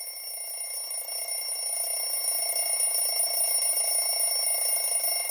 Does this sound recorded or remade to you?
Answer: recorded